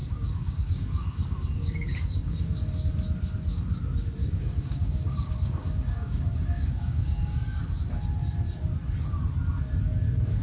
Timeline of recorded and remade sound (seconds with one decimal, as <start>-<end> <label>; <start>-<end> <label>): 0.0-2.5 remade; 2.5-4.2 recorded; 4.2-7.6 remade; 7.6-10.4 recorded